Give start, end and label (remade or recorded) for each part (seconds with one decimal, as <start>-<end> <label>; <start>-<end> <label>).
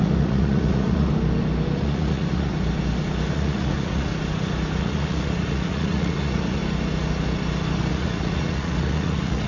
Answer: 0.0-1.1 remade; 1.1-1.8 recorded; 1.8-2.5 remade; 2.5-3.3 recorded; 3.3-4.1 remade; 4.1-4.8 recorded; 4.8-6.6 remade; 6.6-7.9 recorded; 7.9-9.5 remade